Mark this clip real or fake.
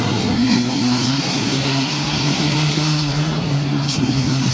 fake